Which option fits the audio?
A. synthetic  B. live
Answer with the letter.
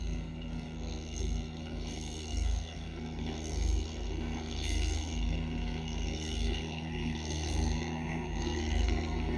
A